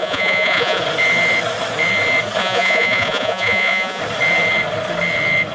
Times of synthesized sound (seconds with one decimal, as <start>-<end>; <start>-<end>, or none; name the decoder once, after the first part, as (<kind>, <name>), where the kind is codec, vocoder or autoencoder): 0.0-0.8 (vocoder, Vocos); 2.4-4.0

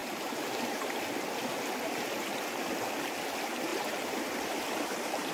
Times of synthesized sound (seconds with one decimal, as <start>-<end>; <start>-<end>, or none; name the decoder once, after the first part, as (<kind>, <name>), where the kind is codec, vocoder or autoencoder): 0.0-1.0 (vocoder, BigVGAN v2); 3.7-5.3